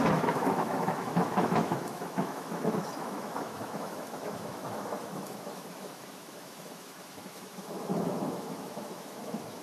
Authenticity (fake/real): fake